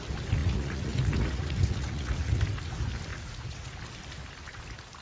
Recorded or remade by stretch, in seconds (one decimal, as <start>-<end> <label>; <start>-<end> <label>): 0.0-0.4 recorded; 0.4-2.4 remade; 2.4-3.1 recorded; 3.1-3.8 remade; 3.8-5.0 recorded